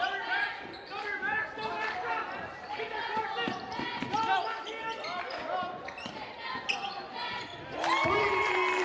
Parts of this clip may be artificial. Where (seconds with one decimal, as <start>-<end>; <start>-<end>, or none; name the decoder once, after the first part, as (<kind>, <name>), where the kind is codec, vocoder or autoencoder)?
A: none